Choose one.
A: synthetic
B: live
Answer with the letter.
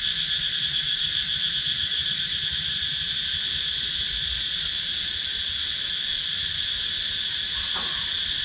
A